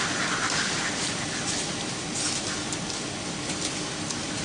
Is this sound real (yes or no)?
yes